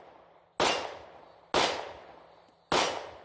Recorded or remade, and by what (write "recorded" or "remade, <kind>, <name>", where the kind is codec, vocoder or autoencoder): recorded